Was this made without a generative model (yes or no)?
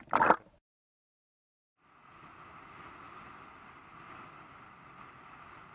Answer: yes